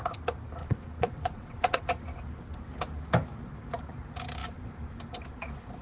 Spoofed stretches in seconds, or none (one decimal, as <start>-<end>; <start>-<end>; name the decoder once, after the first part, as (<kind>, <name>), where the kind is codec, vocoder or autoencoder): 0.6-1.8 (vocoder, WaveNeXt)

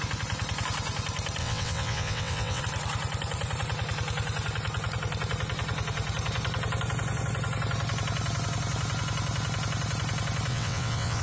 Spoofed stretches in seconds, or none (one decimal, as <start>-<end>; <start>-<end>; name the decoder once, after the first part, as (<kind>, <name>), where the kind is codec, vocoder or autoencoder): 1.4-2.6 (vocoder, WaveNeXt); 10.5-11.2

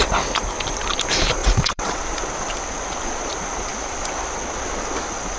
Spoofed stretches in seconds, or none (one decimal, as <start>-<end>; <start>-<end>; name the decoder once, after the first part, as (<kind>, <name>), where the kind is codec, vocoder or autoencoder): 1.4-2.0 (vocoder, WaveNeXt)

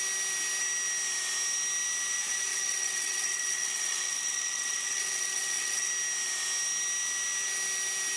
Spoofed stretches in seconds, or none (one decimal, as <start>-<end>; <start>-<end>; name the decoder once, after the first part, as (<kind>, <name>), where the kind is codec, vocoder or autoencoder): 2.5-5.9 (vocoder, WaveNeXt)

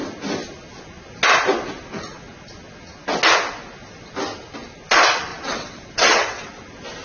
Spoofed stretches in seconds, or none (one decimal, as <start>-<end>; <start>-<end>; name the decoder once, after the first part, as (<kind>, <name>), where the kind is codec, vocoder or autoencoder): 5.3-6.5 (vocoder, WaveNeXt)